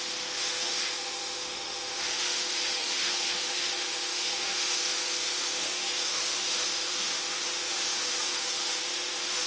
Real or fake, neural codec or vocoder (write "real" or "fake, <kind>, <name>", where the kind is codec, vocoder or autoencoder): fake, autoencoder, DAC-VAE